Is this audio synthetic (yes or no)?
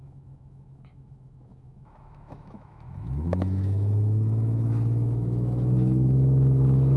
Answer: yes